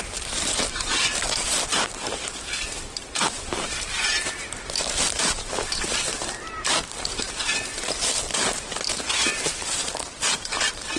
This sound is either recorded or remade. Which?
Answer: remade